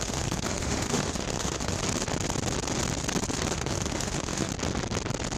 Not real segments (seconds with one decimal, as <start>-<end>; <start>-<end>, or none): 0.0-1.8; 3.5-4.5